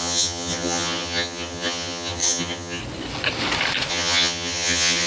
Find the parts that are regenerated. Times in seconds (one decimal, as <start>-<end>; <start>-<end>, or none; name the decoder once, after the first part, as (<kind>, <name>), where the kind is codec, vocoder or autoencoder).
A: 0.0-2.8 (vocoder, HiFi-GAN); 3.9-5.1